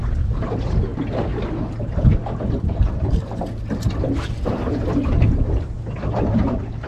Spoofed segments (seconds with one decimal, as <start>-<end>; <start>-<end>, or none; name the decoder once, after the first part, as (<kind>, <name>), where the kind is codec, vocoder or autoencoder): none